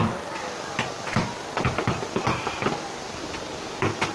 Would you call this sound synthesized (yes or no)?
no